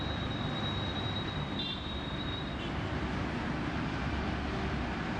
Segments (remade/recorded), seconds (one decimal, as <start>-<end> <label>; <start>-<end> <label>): 0.0-0.9 recorded; 0.9-4.0 remade; 4.0-5.2 recorded